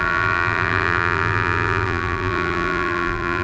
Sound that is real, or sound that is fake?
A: fake